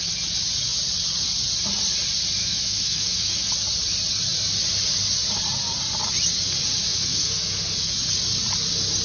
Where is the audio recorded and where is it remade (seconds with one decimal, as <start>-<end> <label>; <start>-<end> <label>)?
0.0-2.4 recorded; 2.4-3.5 remade; 3.5-6.9 recorded; 6.9-7.7 remade; 7.7-9.0 recorded